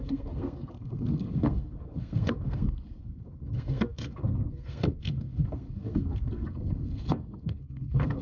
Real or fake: fake